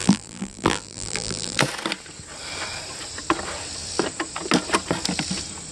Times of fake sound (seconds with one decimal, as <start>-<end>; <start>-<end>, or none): 0.0-1.6